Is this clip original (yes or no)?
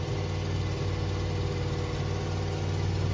yes